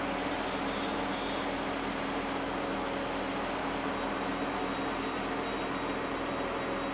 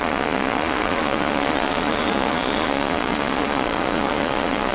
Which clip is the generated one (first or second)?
second